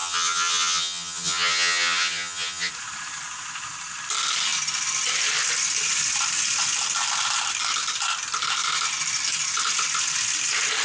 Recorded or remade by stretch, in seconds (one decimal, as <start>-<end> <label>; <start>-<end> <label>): 0.0-2.7 remade; 2.7-10.8 recorded